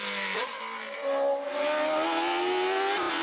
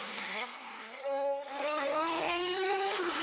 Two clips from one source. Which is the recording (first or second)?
first